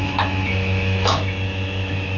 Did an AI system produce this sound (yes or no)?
yes